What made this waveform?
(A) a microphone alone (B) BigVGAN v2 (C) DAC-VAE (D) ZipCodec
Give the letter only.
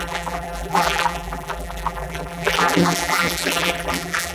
B